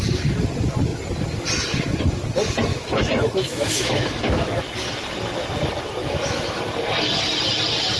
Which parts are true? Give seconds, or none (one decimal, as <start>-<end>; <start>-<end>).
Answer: 0.0-2.7; 4.6-6.0; 6.6-8.0